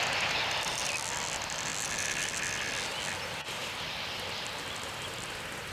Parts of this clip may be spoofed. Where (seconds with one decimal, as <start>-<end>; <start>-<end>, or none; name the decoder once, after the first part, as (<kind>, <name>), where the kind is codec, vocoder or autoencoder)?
none